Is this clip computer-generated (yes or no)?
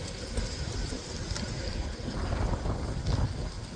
no